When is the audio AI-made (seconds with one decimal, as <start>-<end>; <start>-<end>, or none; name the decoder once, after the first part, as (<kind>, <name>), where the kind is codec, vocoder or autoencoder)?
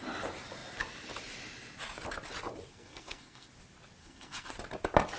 2.7-3.5 (codec, SNAC); 4.0-4.5